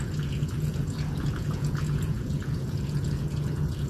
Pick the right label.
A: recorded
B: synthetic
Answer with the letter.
B